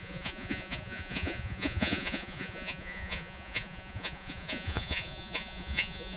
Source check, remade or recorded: remade